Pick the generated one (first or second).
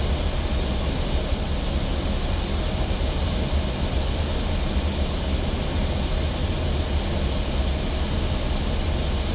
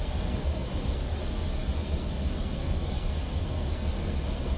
second